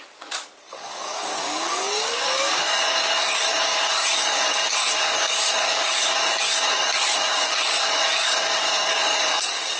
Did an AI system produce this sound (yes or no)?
yes